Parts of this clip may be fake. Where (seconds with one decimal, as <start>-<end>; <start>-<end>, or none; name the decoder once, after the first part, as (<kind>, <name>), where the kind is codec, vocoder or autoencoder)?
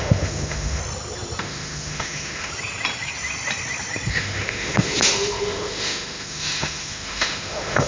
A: 0.0-0.8 (autoencoder, DAC-VAE); 1.4-2.5; 4.1-7.9